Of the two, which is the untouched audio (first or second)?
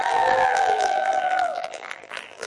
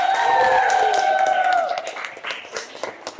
second